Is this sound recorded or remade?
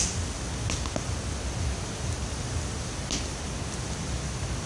recorded